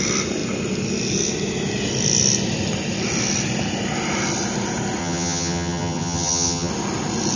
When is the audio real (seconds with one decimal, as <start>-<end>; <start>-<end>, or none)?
0.0-5.0; 6.7-7.4